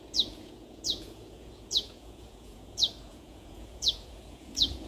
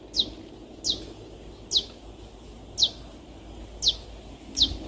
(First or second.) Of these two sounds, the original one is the second